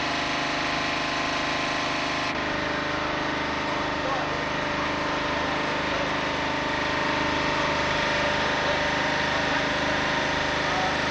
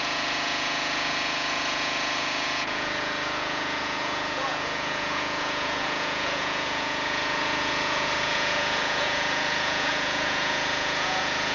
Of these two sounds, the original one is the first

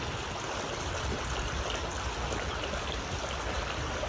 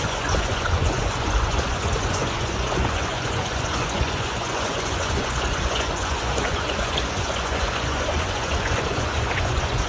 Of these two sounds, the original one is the first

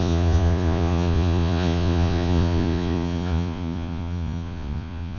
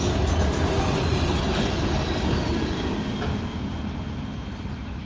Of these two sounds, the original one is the second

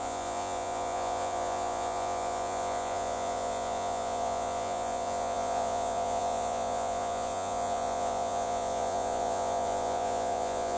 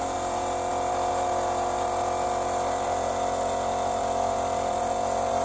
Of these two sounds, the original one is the second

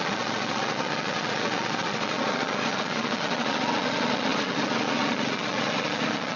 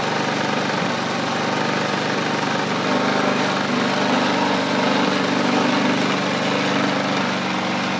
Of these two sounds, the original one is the second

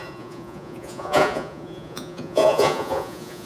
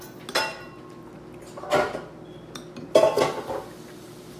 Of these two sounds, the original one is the second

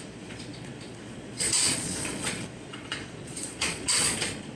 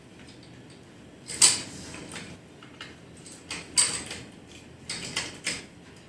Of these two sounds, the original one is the second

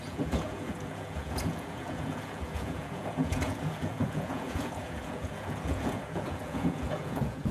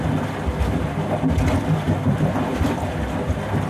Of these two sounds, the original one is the second